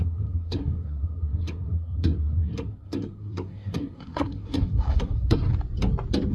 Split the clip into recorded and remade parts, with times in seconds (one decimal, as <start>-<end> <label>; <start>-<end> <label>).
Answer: 0.0-5.5 remade; 5.5-6.3 recorded